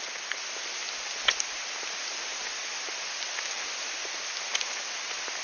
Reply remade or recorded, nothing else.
recorded